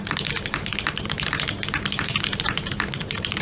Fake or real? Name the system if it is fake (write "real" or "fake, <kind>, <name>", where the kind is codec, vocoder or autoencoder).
fake, vocoder, BigVGAN v2